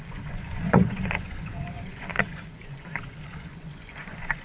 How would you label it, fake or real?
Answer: fake